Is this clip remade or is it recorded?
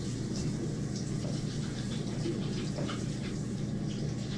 recorded